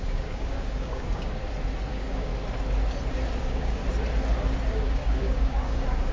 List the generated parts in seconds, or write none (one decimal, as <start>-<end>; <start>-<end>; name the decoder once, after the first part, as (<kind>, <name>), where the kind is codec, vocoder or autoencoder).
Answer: 0.0-1.4 (codec, DAC); 1.9-2.3; 3.4-3.8; 4.7-6.1